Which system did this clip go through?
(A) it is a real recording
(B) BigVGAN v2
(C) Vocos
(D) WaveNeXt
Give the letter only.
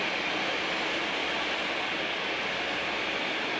A